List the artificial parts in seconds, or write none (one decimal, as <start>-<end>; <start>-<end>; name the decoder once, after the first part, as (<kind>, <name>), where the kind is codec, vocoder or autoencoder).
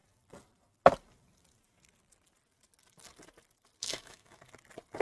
3.8-4.4 (autoencoder, DAC-VAE)